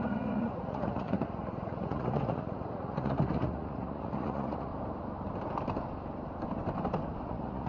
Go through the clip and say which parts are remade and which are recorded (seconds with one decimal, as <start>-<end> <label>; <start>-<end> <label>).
0.0-4.7 remade; 4.7-7.2 recorded; 7.2-7.7 remade